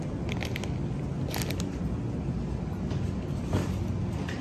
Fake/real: real